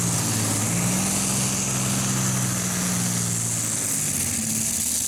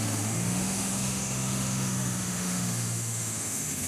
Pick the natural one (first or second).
first